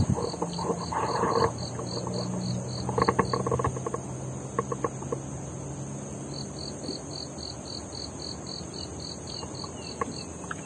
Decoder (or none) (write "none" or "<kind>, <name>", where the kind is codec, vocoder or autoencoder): none